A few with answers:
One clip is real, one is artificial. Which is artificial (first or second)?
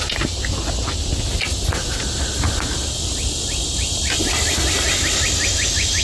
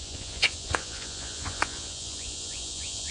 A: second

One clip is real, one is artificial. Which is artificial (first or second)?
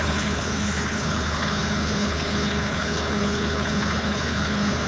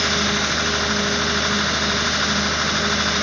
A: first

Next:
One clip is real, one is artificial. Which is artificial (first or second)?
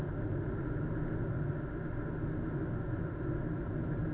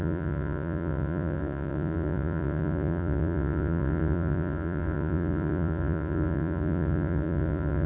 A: second